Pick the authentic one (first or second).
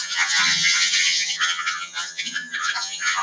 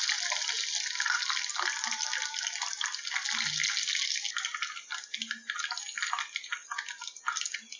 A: second